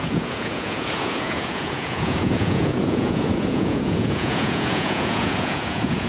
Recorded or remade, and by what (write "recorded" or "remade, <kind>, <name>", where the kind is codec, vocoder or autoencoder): remade, vocoder, Vocos